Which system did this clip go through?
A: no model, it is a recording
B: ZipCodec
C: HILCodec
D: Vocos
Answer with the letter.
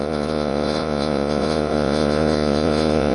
D